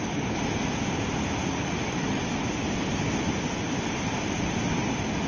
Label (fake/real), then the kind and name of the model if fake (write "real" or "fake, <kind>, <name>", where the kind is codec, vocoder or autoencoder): real